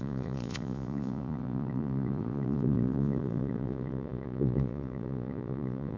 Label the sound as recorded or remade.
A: remade